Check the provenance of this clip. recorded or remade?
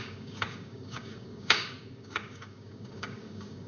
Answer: remade